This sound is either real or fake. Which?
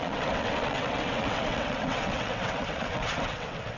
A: fake